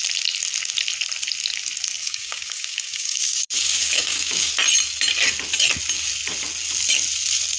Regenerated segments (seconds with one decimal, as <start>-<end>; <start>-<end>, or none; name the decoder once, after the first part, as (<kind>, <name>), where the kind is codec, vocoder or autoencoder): 2.0-4.5 (codec, DAC)